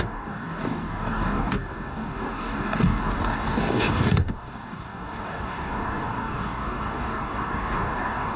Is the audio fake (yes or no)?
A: yes